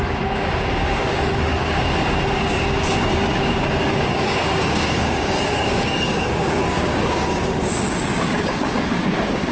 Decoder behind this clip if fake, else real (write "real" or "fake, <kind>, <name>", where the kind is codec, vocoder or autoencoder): fake, codec, DAC